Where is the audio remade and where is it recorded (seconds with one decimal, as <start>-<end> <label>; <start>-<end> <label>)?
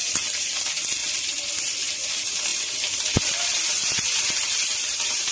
0.0-1.0 recorded; 1.0-1.6 remade; 1.6-2.5 recorded; 2.5-5.3 remade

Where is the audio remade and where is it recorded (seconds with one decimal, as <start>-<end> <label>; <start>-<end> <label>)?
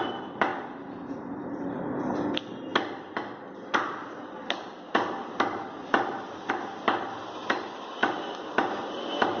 0.0-0.5 remade; 0.5-1.1 recorded; 1.1-2.7 remade; 2.7-3.2 recorded; 3.2-4.0 remade; 4.0-6.5 recorded; 6.5-9.4 remade